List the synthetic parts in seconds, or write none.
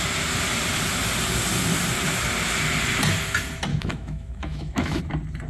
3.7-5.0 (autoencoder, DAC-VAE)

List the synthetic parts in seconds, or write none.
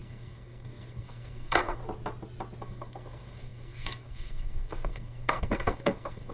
0.0-1.8 (codec, SNAC); 2.6-6.3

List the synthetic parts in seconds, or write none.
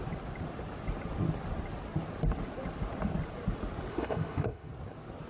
3.9-4.7 (autoencoder, DAC-VAE)